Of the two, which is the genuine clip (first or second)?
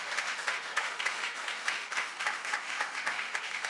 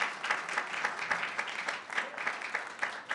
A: second